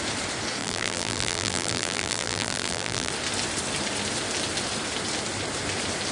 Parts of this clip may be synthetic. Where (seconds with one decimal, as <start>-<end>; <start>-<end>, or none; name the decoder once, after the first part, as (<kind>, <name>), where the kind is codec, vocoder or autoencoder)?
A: 0.6-3.1 (vocoder, BigVGAN v2)